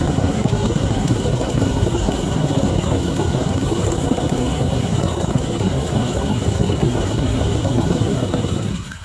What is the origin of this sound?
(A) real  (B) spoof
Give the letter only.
B